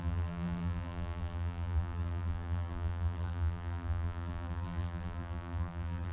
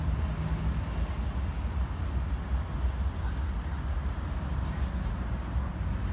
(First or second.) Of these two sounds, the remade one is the first